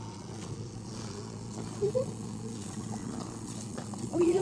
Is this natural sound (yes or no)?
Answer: no